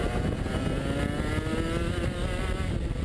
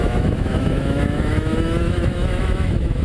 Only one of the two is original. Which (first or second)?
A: first